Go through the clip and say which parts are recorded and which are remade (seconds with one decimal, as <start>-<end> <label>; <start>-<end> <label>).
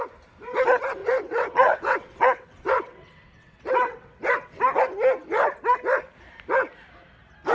0.0-1.0 recorded; 1.0-4.6 remade; 4.6-7.5 recorded